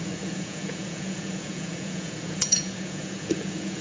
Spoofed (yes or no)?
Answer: yes